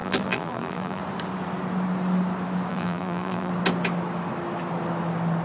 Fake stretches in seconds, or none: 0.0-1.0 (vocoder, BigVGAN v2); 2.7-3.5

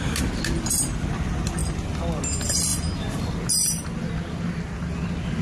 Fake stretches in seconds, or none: none